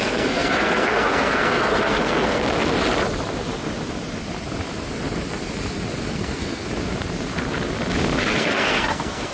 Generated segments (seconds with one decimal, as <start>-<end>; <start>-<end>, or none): 0.0-2.4; 6.1-6.6; 8.3-9.3